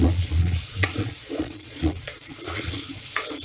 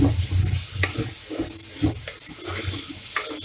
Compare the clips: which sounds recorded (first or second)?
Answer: second